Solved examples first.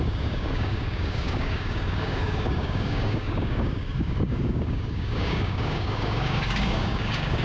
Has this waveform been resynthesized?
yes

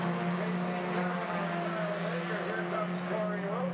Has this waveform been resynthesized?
no